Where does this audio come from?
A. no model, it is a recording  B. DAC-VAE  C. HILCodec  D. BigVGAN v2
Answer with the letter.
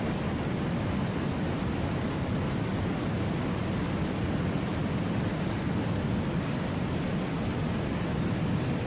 D